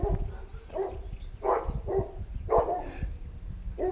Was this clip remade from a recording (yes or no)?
no